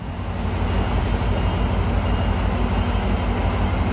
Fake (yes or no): no